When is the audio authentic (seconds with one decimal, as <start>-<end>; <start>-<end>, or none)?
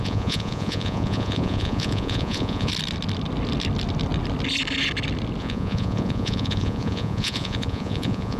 2.7-5.4